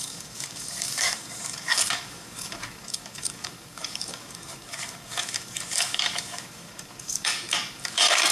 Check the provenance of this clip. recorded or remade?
remade